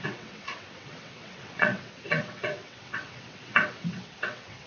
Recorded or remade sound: remade